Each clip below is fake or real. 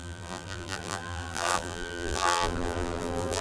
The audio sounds fake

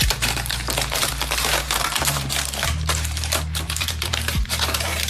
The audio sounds fake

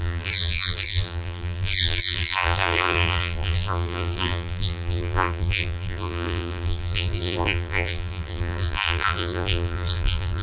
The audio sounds fake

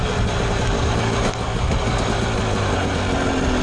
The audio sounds real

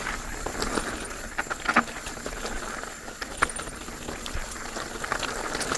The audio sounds real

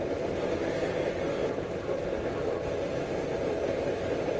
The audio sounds real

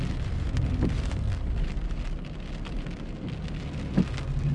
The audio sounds fake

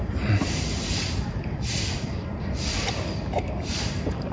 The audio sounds fake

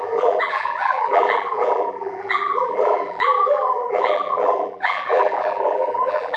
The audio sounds fake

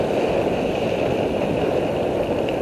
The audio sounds real